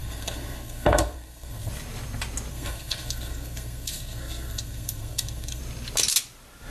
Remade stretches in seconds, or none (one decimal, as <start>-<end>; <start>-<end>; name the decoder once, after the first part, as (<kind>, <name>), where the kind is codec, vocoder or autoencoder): 0.0-1.7 (codec, SNAC); 2.5-5.6